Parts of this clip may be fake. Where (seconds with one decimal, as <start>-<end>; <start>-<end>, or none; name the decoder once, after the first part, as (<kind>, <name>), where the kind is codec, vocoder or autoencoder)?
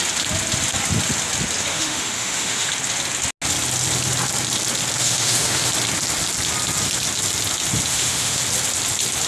1.7-2.7 (autoencoder, DAC-VAE); 5.0-5.7; 7.9-8.4